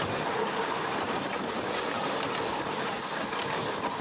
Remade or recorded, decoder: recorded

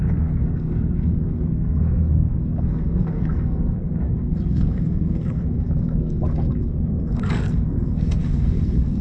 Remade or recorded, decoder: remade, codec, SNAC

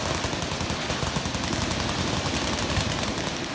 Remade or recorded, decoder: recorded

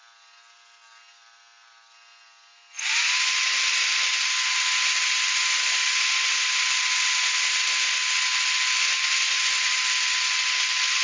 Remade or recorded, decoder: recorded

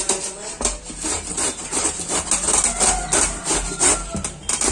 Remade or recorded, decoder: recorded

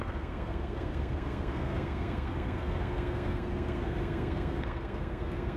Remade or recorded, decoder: remade, codec, SNAC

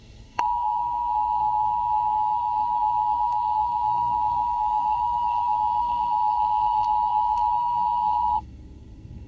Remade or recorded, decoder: remade, codec, SNAC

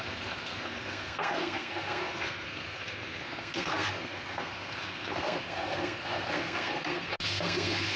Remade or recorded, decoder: remade, codec, SNAC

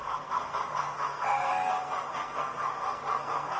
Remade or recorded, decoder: remade, codec, SNAC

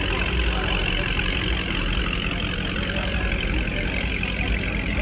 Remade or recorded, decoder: recorded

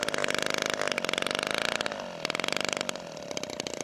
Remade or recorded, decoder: recorded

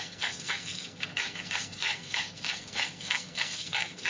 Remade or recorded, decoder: remade, codec, SNAC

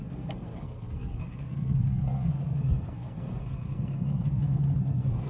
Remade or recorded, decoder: remade, codec, SNAC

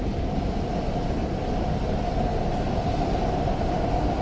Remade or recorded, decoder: recorded